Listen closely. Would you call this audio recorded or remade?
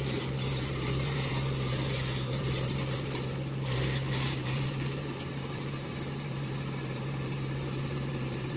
remade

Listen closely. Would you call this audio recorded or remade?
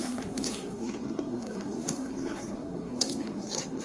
remade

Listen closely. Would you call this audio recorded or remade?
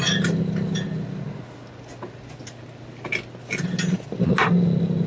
recorded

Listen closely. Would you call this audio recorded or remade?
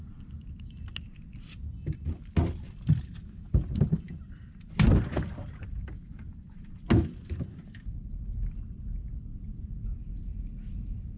recorded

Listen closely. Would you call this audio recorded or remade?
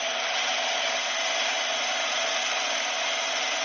recorded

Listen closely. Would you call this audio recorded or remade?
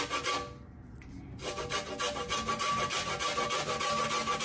recorded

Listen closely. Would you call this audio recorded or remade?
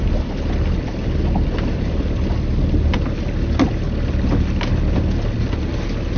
recorded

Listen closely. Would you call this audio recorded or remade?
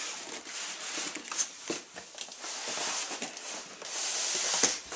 recorded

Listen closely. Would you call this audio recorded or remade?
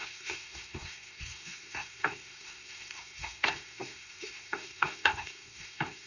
remade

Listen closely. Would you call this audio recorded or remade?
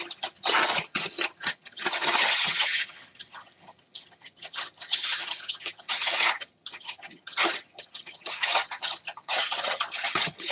remade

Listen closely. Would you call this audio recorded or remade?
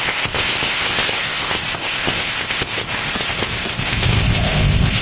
remade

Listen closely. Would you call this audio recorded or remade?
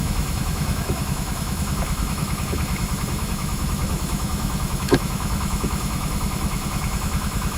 remade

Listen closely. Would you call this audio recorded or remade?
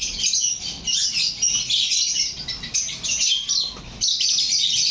recorded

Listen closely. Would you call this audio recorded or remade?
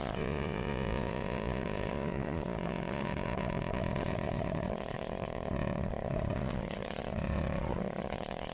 remade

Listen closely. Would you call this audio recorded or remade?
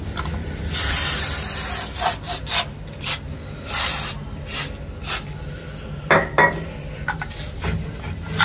recorded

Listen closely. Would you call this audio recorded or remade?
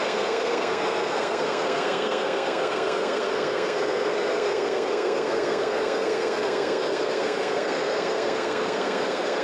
remade